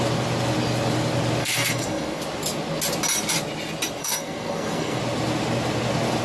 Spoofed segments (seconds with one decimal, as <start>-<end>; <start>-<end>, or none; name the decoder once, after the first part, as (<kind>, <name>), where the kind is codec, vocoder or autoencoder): 1.4-2.2 (codec, SNAC); 4.0-5.0